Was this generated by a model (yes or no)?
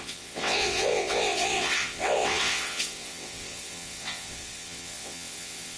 yes